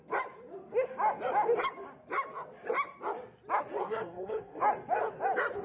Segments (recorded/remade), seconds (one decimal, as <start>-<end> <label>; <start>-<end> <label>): 0.0-3.8 recorded; 3.8-4.6 remade; 4.6-5.6 recorded